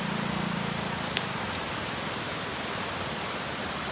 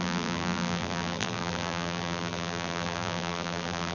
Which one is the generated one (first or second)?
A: second